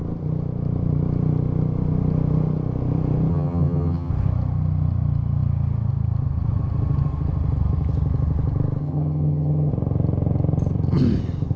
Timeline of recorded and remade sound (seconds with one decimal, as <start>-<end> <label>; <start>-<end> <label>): 0.0-3.3 recorded; 3.3-4.1 remade; 4.1-8.8 recorded; 8.8-9.7 remade; 9.7-11.6 recorded

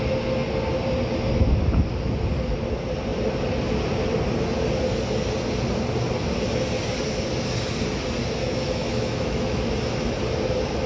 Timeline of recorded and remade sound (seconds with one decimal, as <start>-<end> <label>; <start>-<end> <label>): 0.0-8.4 recorded; 8.4-9.7 remade; 9.7-10.9 recorded

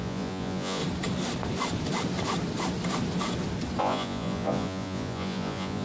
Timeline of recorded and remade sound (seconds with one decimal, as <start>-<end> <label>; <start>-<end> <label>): 0.0-0.8 remade; 0.8-3.8 recorded; 3.8-5.8 remade

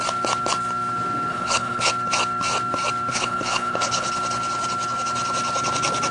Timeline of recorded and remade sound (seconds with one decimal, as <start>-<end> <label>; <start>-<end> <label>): 0.0-1.3 recorded; 1.3-1.9 remade; 1.9-3.1 recorded; 3.1-4.1 remade; 4.1-6.1 recorded

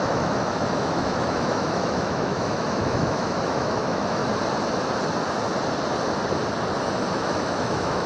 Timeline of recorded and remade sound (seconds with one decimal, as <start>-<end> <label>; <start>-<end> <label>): 0.0-4.2 remade; 4.2-7.1 recorded; 7.1-8.1 remade

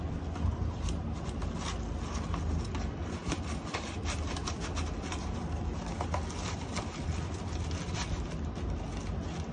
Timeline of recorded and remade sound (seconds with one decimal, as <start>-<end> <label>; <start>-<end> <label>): 0.0-3.2 recorded; 3.2-6.6 remade; 6.6-9.5 recorded

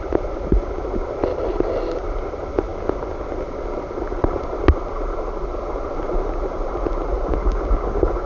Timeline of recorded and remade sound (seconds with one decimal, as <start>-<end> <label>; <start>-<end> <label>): 0.0-8.3 recorded

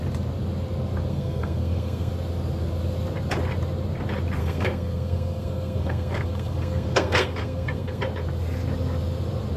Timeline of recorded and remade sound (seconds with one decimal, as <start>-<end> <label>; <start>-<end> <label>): 0.0-1.1 recorded; 1.1-2.1 remade; 2.1-4.4 recorded; 4.4-8.0 remade; 8.0-9.6 recorded